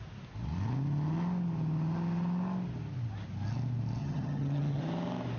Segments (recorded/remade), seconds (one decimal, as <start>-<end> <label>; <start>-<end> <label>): 0.0-4.0 recorded; 4.0-4.8 remade; 4.8-5.4 recorded